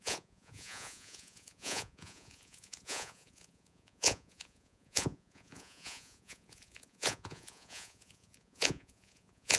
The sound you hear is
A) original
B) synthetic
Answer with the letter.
B